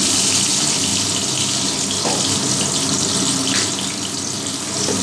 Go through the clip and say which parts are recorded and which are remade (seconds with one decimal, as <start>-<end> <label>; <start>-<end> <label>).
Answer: 0.0-5.0 recorded